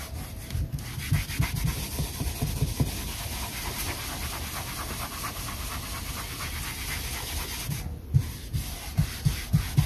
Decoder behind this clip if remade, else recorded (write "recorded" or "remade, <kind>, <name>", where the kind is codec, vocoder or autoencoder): recorded